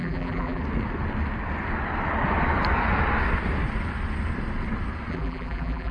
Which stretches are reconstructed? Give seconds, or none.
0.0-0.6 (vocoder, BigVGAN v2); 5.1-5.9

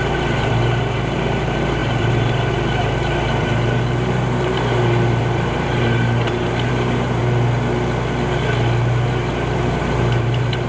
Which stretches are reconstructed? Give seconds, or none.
0.0-7.2 (vocoder, BigVGAN v2); 9.1-10.7

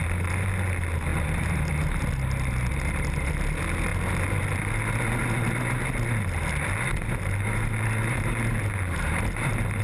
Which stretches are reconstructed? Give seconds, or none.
1.1-2.0 (vocoder, BigVGAN v2)

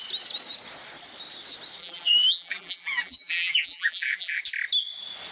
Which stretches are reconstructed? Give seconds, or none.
1.8-4.4 (vocoder, BigVGAN v2)

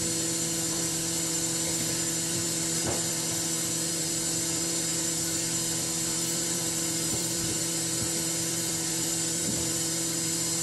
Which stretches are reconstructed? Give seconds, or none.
0.0-10.6 (vocoder, BigVGAN v2)

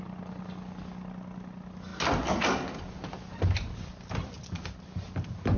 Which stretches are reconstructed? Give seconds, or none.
none

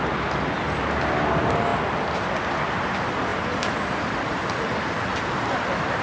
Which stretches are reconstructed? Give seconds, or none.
3.3-5.5 (vocoder, BigVGAN v2)

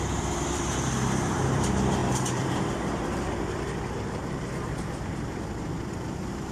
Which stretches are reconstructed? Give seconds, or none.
0.0-6.5 (vocoder, BigVGAN v2)